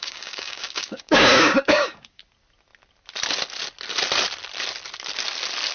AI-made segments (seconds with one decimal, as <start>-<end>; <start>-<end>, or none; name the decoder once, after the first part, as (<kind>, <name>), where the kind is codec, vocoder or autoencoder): 0.0-2.2 (codec, DAC)